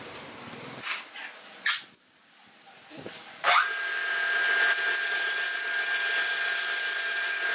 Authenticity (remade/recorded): recorded